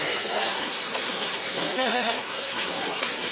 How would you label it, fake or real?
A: fake